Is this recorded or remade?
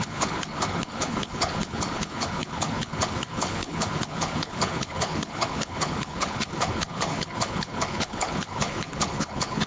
remade